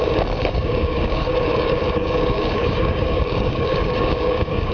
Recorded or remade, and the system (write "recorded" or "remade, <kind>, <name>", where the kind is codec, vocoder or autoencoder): remade, codec, DAC